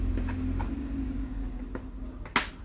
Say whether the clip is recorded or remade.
recorded